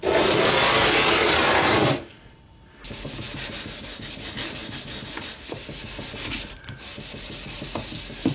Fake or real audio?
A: real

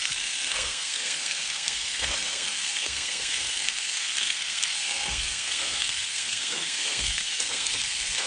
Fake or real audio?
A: fake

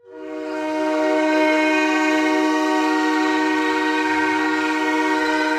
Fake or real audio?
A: fake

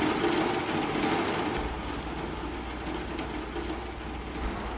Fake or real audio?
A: real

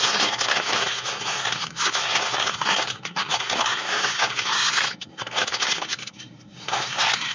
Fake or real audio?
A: fake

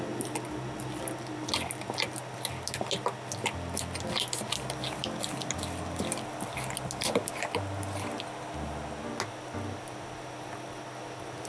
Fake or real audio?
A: real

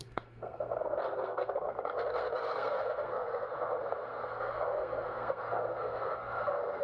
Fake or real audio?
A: fake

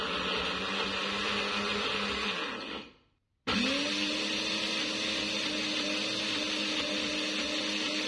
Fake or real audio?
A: real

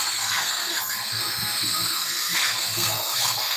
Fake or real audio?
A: fake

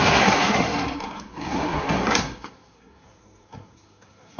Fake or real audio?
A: fake